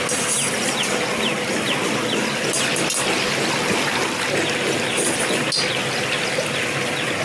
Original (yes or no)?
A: yes